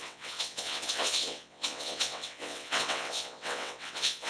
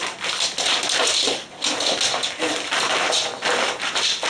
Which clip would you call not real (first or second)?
first